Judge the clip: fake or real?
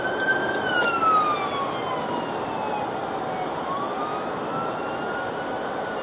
real